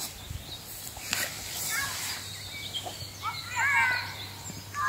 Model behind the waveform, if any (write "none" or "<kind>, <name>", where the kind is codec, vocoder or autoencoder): none